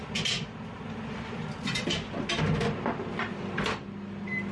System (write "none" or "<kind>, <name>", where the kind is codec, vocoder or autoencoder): none